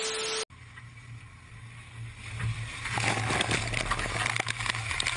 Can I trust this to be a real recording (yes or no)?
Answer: yes